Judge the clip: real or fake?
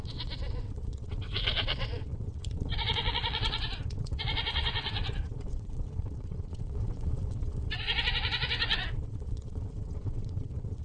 fake